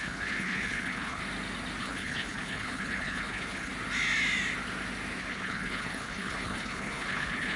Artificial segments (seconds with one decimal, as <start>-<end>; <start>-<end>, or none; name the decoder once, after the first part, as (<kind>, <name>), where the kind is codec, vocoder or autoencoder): 0.0-1.2 (codec, HILCodec); 1.8-3.7; 5.2-7.6